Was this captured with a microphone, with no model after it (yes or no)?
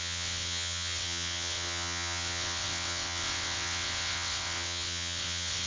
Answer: no